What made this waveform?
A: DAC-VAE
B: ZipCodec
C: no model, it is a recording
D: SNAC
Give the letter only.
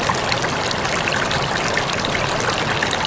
C